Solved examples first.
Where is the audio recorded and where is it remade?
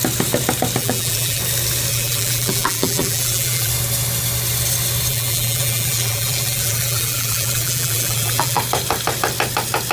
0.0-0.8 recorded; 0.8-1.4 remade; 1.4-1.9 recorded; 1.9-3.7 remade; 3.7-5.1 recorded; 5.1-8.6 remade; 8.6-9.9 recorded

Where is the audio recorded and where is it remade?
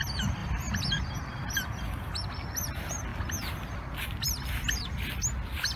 0.0-0.4 recorded; 0.4-1.0 remade; 1.0-5.8 recorded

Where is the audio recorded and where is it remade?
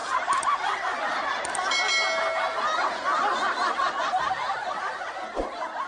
0.0-1.7 remade; 1.7-3.6 recorded; 3.6-4.2 remade; 4.2-5.9 recorded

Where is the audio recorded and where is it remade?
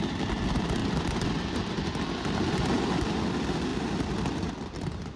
0.0-5.2 remade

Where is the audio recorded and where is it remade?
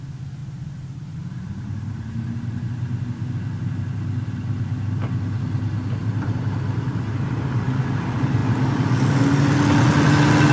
0.0-0.4 recorded; 0.4-2.1 remade; 2.1-6.0 recorded; 6.0-6.5 remade; 6.5-10.5 recorded